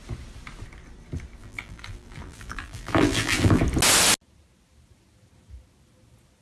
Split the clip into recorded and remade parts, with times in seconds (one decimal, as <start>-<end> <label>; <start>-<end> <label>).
0.0-1.4 recorded; 1.4-3.6 remade; 3.6-6.4 recorded